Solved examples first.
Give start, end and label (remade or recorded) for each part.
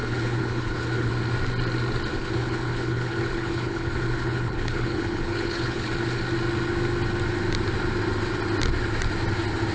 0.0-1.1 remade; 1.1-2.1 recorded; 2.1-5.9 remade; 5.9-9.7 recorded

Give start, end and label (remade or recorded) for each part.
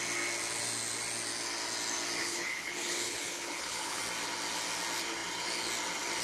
0.0-2.2 recorded; 2.2-4.0 remade; 4.0-6.2 recorded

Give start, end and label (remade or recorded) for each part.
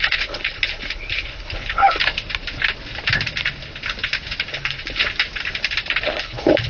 0.0-2.0 remade; 2.0-4.5 recorded; 4.5-5.0 remade; 5.0-6.0 recorded; 6.0-6.7 remade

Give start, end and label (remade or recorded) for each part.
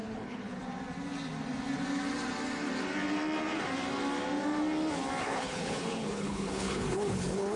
0.0-0.6 remade; 0.6-5.2 recorded; 5.2-7.6 remade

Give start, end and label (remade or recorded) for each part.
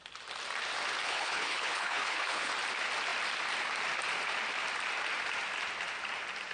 0.0-1.0 recorded; 1.0-2.5 remade; 2.5-6.5 recorded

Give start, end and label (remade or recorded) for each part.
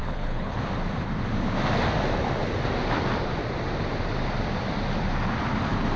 0.0-0.6 remade; 0.6-6.0 recorded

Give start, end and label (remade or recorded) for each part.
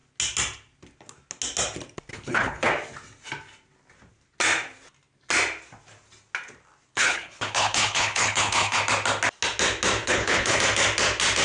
0.0-2.1 recorded; 2.1-2.7 remade; 2.7-6.9 recorded; 6.9-8.8 remade; 8.8-10.0 recorded; 10.0-10.6 remade; 10.6-11.4 recorded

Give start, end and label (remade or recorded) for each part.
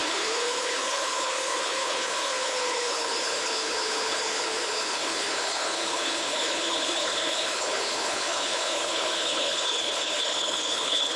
0.0-11.2 remade